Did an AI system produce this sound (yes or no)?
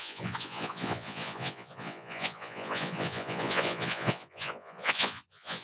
yes